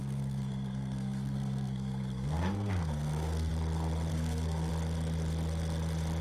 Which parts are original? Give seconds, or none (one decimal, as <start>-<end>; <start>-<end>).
3.5-4.1; 4.7-6.2

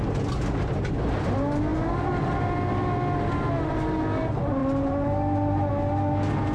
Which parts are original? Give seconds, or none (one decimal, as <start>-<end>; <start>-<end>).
0.0-4.6; 5.7-6.5

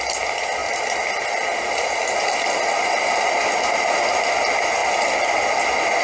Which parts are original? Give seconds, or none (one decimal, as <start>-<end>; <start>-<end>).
0.0-0.6; 3.8-4.8; 5.5-6.0

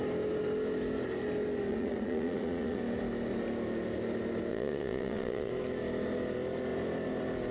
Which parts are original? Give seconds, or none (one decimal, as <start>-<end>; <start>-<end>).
0.0-1.7; 2.8-4.5; 5.5-7.5

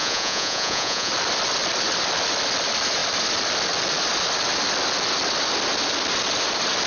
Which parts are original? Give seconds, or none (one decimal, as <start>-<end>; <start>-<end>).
1.1-6.9